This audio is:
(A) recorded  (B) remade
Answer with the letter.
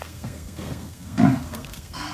B